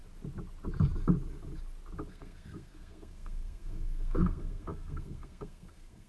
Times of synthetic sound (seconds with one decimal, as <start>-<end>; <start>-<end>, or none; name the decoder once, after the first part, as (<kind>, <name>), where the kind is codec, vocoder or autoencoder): 2.1-6.1 (codec, SNAC)